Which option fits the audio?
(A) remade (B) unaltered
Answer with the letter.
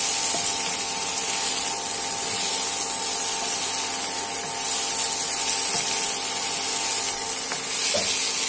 B